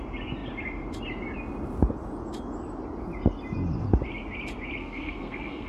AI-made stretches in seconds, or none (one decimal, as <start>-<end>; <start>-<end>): 4.8-5.7